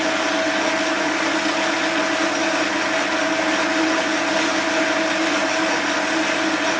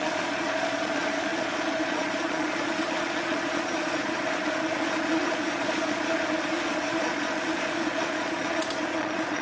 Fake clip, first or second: second